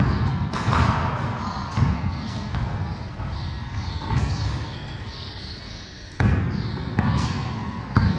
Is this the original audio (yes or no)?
no